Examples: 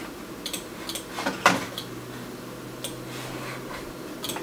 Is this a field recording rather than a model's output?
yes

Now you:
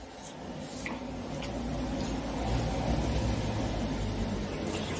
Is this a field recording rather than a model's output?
yes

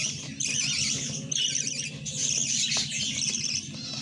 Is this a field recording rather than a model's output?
yes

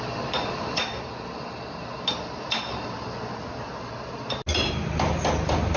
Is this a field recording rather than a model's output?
yes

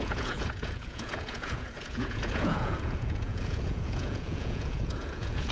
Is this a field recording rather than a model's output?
no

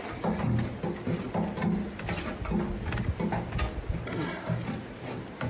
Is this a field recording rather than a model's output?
yes